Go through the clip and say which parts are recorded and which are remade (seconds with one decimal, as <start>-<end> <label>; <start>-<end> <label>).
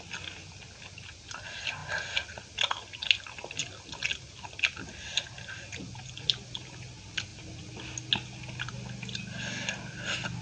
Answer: 0.0-10.4 recorded